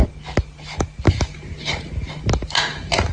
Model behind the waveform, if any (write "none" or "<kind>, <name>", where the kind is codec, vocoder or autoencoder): none